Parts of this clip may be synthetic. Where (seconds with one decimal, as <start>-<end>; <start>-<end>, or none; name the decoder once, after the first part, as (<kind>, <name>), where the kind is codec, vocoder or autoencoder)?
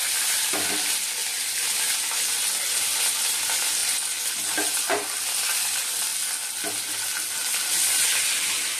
none